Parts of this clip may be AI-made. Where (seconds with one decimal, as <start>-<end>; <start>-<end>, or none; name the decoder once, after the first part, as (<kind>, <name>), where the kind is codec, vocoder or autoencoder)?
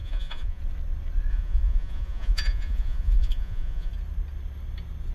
0.0-0.6 (vocoder, Vocos); 1.3-3.9